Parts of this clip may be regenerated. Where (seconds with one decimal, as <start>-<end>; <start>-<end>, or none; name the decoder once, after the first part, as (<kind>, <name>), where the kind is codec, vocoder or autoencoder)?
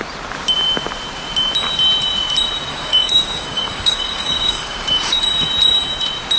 2.7-5.2 (codec, DAC)